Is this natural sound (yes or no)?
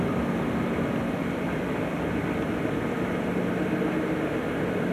yes